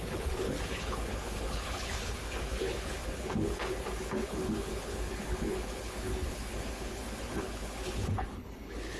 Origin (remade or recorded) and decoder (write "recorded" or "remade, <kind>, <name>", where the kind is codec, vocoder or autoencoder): remade, codec, HILCodec